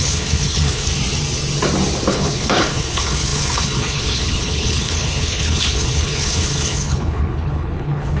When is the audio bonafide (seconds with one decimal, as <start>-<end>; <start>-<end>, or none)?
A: 0.8-2.1